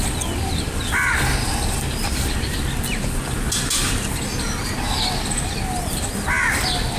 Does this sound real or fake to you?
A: real